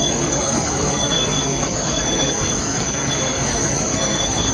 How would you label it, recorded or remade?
remade